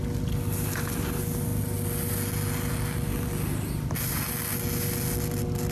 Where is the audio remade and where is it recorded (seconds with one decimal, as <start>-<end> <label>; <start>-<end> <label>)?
0.0-5.7 recorded